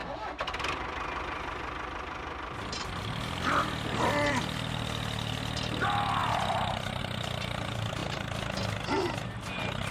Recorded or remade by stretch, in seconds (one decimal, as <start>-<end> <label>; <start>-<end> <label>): 0.0-9.9 recorded